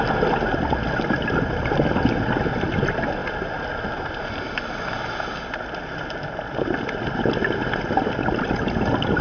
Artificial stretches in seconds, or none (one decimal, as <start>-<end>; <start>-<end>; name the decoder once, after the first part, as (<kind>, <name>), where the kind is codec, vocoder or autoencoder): none